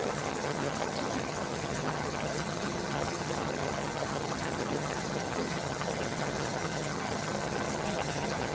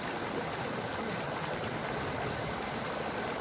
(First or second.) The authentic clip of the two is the second